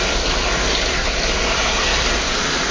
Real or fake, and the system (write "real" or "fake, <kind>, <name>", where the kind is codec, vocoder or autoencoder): fake, vocoder, BigVGAN v2